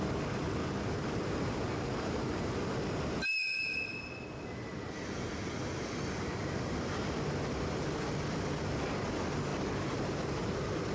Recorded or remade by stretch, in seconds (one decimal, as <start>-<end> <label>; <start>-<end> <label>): 0.0-0.6 recorded; 0.6-2.5 remade; 2.5-9.5 recorded; 9.5-10.5 remade; 10.5-10.9 recorded